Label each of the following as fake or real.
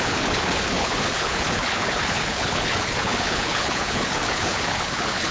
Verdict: fake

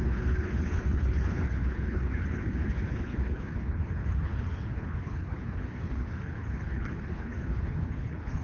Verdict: fake